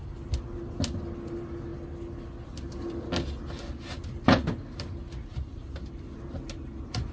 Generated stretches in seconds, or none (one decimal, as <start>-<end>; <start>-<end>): none